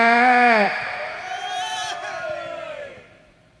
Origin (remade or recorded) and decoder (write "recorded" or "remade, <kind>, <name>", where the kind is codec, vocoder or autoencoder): remade, vocoder, BigVGAN v2